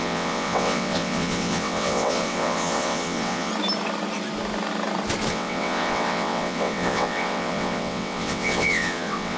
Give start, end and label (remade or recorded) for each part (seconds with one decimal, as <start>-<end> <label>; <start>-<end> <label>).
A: 0.0-3.5 remade; 3.5-5.3 recorded; 5.3-9.4 remade